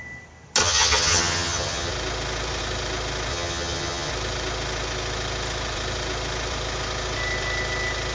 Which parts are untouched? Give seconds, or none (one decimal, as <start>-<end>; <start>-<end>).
0.0-0.6; 1.9-3.3; 4.1-8.1